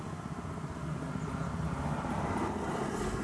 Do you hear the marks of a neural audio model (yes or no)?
no